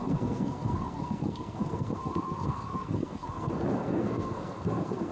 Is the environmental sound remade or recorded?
remade